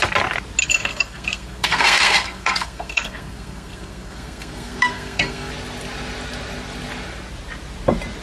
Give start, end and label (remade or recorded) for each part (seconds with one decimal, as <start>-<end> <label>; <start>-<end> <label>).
0.0-0.6 recorded; 0.6-5.5 remade; 5.5-8.2 recorded